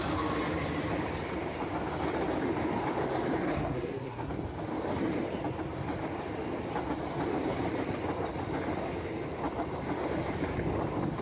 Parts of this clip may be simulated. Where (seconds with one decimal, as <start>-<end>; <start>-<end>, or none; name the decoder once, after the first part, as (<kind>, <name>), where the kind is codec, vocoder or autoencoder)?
3.4-4.3 (codec, SNAC)